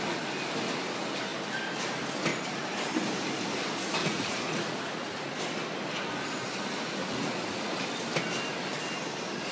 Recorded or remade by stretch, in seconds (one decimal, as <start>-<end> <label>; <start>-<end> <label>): 0.0-4.0 recorded; 4.0-5.4 remade; 5.4-7.0 recorded; 7.0-7.7 remade; 7.7-9.5 recorded